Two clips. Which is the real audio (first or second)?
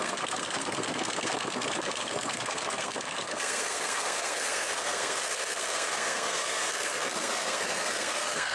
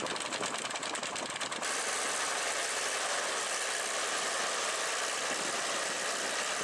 second